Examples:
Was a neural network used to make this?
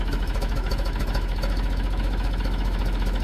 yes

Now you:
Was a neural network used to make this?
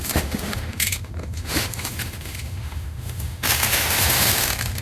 yes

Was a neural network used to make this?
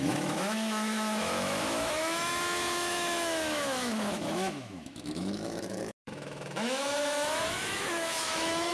yes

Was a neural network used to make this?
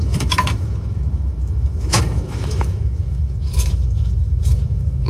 yes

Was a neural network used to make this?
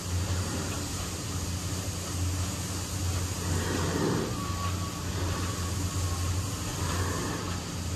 no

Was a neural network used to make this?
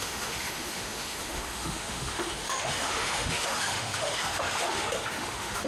yes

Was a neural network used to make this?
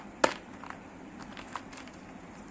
no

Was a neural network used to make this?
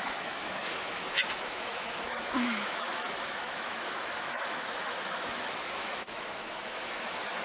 yes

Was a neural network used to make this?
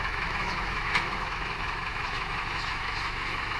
yes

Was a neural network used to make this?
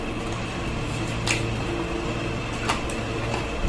no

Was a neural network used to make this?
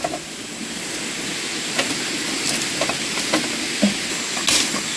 no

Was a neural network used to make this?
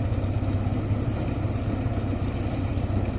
no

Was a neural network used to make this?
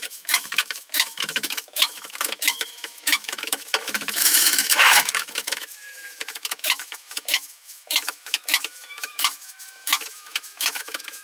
yes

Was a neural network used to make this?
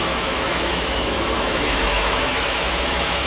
yes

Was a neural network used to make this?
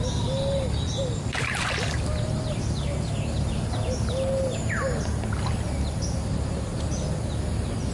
no